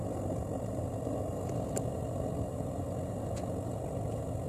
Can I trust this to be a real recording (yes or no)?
yes